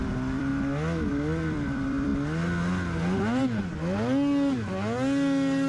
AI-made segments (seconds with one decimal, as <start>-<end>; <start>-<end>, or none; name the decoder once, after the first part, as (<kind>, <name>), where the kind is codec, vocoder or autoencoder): 0.0-0.5 (vocoder, BigVGAN v2); 1.1-2.1